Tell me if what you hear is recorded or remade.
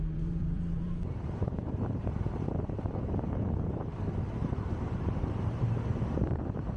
remade